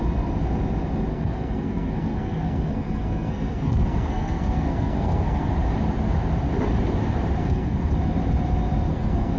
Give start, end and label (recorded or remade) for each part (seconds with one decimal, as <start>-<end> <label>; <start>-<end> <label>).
0.0-1.1 recorded; 1.1-5.5 remade; 5.5-7.4 recorded; 7.4-7.9 remade; 7.9-8.9 recorded; 8.9-9.4 remade

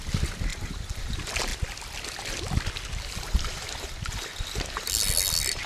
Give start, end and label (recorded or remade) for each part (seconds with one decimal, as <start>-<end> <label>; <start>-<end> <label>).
0.0-5.7 recorded

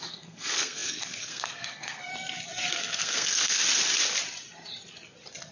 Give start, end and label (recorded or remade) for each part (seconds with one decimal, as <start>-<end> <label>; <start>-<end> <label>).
0.0-2.1 remade; 2.1-2.7 recorded; 2.7-3.6 remade; 3.6-5.5 recorded

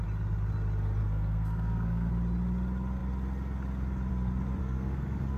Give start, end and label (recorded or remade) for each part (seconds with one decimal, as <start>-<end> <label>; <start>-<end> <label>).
0.0-1.0 recorded; 1.0-2.1 remade; 2.1-4.6 recorded; 4.6-5.4 remade